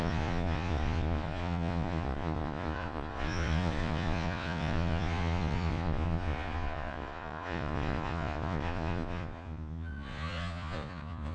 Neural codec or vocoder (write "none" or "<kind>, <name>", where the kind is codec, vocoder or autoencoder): vocoder, Vocos